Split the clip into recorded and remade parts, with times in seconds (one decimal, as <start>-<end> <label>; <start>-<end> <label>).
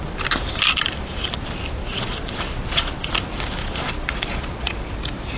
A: 0.0-1.8 recorded; 1.8-3.1 remade; 3.1-3.6 recorded; 3.6-5.0 remade; 5.0-5.4 recorded